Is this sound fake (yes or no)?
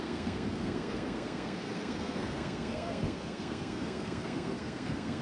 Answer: yes